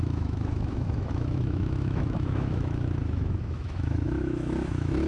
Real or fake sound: fake